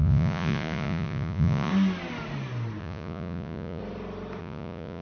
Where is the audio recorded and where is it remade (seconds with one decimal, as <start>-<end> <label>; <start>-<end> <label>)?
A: 0.0-1.7 remade; 1.7-2.8 recorded; 2.8-3.8 remade; 3.8-4.4 recorded; 4.4-5.0 remade